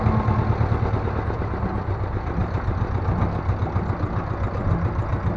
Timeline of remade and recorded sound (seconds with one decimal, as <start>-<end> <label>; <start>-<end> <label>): 0.0-5.4 recorded